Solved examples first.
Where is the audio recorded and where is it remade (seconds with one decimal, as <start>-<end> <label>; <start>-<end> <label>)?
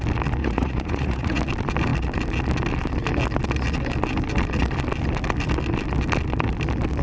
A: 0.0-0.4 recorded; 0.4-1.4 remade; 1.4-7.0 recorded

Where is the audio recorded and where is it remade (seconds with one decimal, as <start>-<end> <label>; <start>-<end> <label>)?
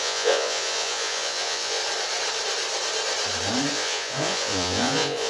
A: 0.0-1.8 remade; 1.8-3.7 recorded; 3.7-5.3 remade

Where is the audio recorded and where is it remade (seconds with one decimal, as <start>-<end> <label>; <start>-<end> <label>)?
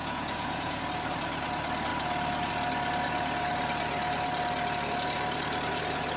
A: 0.0-0.8 remade; 0.8-6.2 recorded